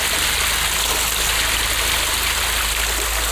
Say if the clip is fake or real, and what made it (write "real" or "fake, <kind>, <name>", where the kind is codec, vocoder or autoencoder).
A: real